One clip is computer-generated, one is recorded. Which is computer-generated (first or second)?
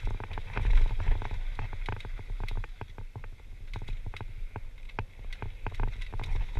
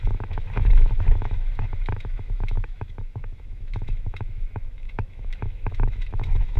second